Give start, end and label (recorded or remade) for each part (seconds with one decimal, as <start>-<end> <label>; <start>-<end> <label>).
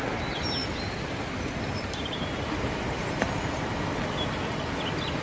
0.0-0.6 recorded; 0.6-2.3 remade; 2.3-3.0 recorded; 3.0-4.0 remade; 4.0-5.2 recorded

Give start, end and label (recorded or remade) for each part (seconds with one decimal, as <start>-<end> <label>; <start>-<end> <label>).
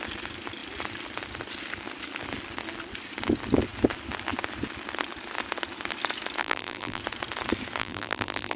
0.0-6.4 recorded; 6.4-7.0 remade; 7.0-7.8 recorded; 7.8-8.6 remade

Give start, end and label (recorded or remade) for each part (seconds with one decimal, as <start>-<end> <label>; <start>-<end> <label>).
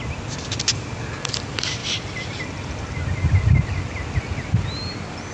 0.0-5.3 recorded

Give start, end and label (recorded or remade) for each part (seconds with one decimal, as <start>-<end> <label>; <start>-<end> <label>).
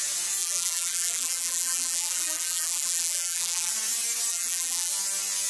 0.0-0.4 recorded; 0.4-3.7 remade; 3.7-4.3 recorded; 4.3-4.9 remade; 4.9-5.5 recorded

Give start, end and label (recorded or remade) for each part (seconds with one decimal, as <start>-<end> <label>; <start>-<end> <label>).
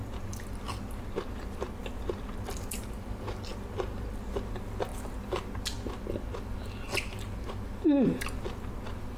0.0-9.2 recorded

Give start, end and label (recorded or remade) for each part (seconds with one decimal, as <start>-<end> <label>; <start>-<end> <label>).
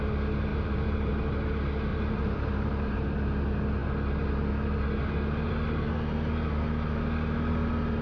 0.0-0.5 recorded; 0.5-1.1 remade; 1.1-1.9 recorded; 1.9-3.1 remade; 3.1-8.0 recorded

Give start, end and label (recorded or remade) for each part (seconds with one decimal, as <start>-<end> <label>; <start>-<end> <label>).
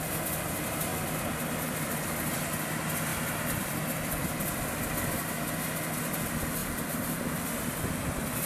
0.0-3.1 recorded; 3.1-3.8 remade; 3.8-6.6 recorded; 6.6-8.5 remade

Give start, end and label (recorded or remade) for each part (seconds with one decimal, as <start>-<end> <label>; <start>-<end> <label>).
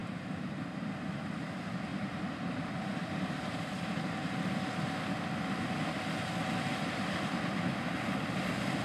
0.0-1.2 remade; 1.2-1.9 recorded; 1.9-4.6 remade; 4.6-8.8 recorded